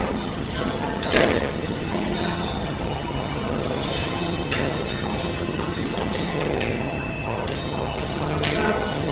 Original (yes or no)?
no